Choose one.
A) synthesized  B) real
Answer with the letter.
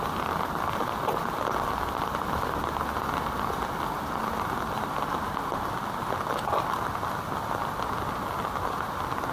B